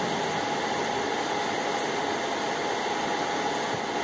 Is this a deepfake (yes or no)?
no